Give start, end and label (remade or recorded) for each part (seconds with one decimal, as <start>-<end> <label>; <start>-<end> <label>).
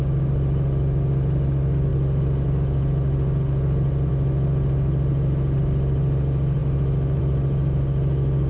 0.0-8.5 recorded